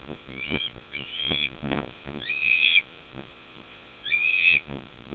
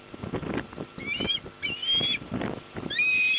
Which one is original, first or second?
second